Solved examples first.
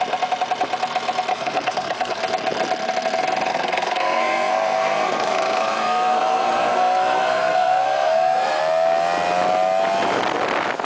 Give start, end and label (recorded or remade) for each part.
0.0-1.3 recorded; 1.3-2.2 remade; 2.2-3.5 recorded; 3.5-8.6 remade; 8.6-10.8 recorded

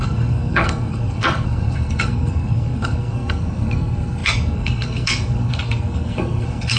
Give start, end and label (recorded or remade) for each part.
0.0-6.8 remade

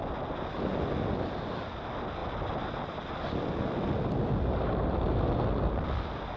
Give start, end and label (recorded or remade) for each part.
0.0-6.4 recorded

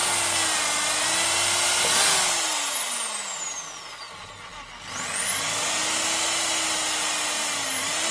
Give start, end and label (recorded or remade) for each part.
0.0-8.1 recorded

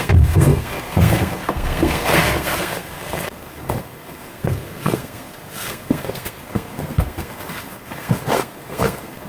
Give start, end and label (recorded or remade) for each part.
0.0-9.3 remade

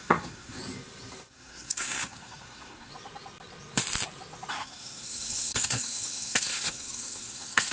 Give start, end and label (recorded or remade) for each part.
0.0-0.6 remade; 0.6-1.3 recorded; 1.3-2.9 remade; 2.9-4.5 recorded; 4.5-7.7 remade